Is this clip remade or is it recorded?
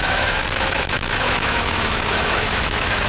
remade